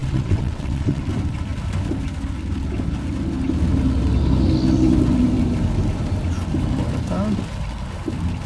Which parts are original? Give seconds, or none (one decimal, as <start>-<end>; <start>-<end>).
1.0-8.5